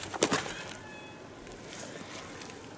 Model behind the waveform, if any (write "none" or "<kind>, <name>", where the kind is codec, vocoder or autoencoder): none